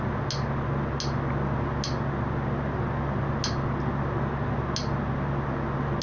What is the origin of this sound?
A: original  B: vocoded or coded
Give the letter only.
A